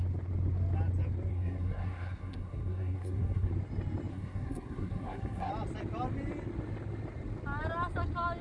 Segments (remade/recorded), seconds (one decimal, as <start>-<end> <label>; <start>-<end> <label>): 0.0-1.3 recorded; 1.3-3.5 remade; 3.5-4.1 recorded; 4.1-5.5 remade; 5.5-8.4 recorded